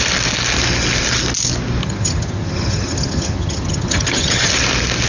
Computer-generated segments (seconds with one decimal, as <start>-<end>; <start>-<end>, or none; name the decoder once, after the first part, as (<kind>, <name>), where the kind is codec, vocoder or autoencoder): 1.8-4.5 (vocoder, HiFi-GAN)